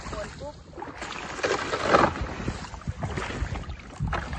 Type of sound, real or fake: real